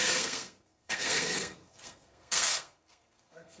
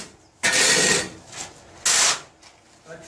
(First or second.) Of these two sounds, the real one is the second